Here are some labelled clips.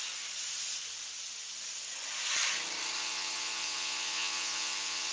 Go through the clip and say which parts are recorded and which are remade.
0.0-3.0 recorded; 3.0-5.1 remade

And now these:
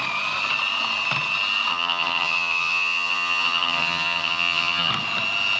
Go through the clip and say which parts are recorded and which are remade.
0.0-1.7 recorded; 1.7-4.9 remade; 4.9-5.6 recorded

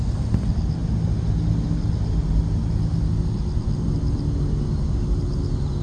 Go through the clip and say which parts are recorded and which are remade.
0.0-5.8 recorded